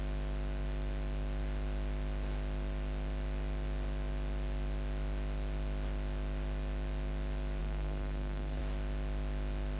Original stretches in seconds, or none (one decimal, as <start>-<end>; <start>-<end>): 0.0-7.6; 8.6-9.8